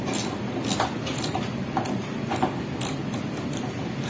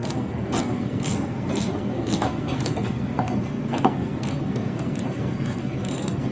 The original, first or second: first